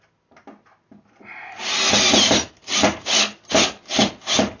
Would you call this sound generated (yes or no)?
no